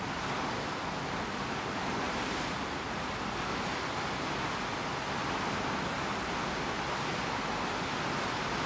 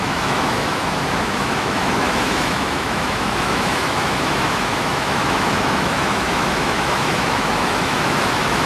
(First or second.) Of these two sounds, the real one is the first